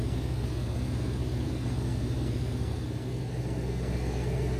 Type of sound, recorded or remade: remade